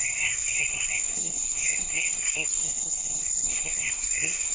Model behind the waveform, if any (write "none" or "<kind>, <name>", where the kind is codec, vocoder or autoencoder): codec, SNAC